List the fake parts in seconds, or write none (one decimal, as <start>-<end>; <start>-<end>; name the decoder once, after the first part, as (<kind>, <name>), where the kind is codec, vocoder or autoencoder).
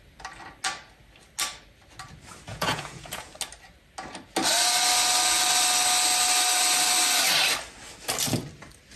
2.5-3.3 (vocoder, Vocos)